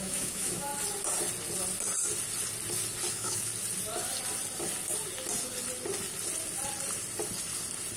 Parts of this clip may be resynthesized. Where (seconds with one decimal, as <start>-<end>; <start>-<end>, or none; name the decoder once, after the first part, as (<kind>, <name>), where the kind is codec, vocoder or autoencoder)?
0.0-0.7 (autoencoder, DAC-VAE); 3.1-3.5